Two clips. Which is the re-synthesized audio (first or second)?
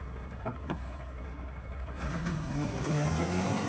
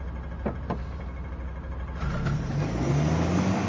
first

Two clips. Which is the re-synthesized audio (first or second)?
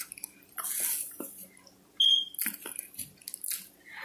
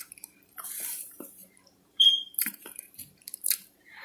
second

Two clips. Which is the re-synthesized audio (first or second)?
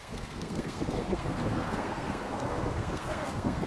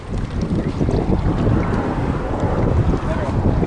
first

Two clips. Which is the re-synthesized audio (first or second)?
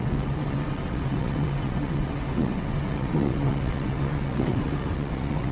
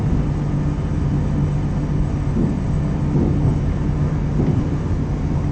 first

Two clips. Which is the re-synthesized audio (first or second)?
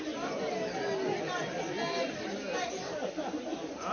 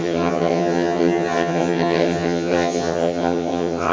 second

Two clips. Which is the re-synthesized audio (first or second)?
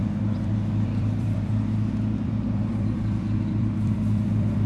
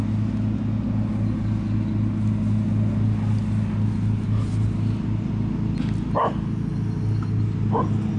first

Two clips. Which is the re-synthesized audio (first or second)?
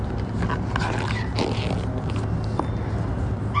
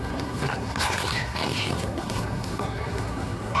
second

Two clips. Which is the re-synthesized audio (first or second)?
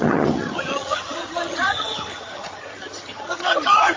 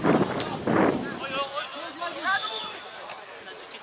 first